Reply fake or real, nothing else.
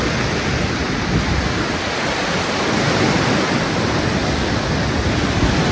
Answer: real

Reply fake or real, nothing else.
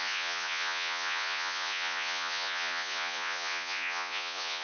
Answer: fake